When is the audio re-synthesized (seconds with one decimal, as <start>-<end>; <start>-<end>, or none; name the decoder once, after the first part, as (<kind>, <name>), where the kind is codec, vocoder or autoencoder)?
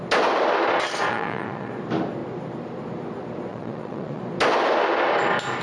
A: 1.1-1.7 (vocoder, Vocos); 3.5-4.2